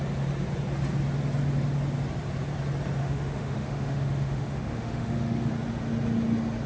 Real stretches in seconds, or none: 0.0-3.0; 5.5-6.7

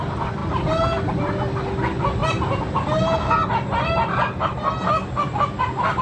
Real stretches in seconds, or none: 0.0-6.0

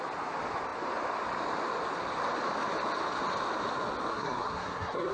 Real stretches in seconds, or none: 0.0-4.1